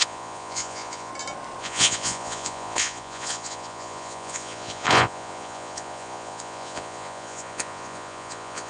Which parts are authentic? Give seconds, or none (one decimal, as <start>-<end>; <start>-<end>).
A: 1.1-1.6